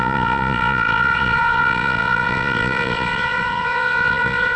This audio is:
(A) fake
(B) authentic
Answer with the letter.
A